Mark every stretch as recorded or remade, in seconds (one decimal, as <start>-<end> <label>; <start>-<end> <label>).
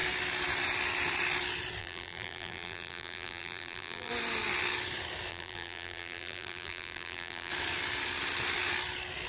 0.0-1.8 recorded; 1.8-4.1 remade; 4.1-5.3 recorded; 5.3-7.5 remade; 7.5-9.3 recorded